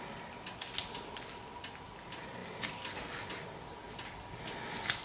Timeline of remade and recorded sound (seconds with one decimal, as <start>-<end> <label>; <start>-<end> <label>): 0.0-5.0 recorded